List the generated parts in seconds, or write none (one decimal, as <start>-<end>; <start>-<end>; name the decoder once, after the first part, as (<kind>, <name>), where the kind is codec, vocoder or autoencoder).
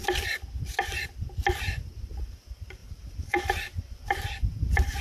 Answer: 1.6-5.0 (vocoder, BigVGAN v2)